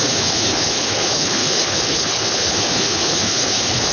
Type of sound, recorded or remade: remade